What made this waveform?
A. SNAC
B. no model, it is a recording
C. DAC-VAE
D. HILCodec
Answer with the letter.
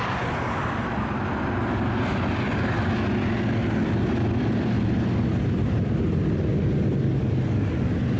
B